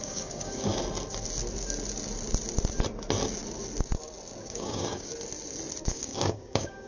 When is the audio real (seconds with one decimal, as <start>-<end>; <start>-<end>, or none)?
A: 0.7-4.4; 5.1-5.9